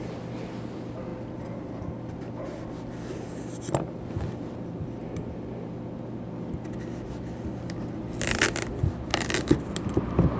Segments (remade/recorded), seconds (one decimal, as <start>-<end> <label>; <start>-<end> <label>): 0.0-10.4 recorded